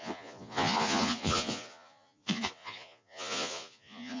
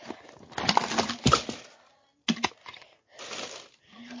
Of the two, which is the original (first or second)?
second